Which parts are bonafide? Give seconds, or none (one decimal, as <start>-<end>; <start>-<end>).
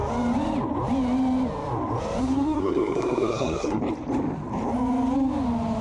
0.0-2.2; 3.8-5.8